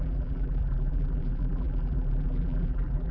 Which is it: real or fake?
fake